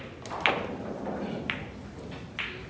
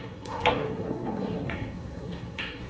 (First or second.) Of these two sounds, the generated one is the second